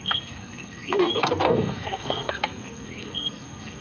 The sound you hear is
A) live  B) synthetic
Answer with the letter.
B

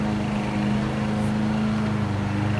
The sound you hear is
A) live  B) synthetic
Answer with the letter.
A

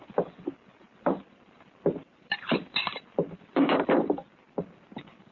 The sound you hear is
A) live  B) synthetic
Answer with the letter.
B